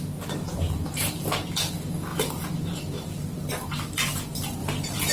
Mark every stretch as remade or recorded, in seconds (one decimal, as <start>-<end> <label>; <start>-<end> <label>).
0.0-2.1 recorded; 2.1-3.5 remade; 3.5-4.6 recorded; 4.6-5.1 remade